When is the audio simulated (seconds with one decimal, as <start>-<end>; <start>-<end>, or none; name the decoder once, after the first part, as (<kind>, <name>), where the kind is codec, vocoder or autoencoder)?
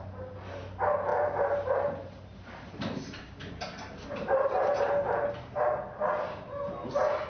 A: none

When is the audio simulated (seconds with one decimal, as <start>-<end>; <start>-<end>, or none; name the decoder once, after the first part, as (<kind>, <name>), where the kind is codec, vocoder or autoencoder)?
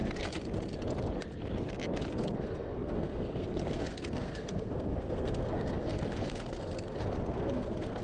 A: 2.1-8.0 (codec, SNAC)